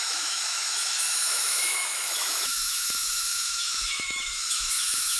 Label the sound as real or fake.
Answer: fake